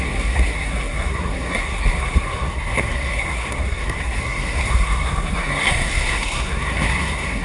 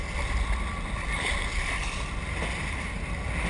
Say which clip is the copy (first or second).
first